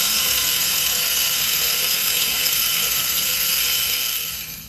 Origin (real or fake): fake